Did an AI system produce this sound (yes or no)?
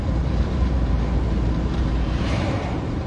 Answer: yes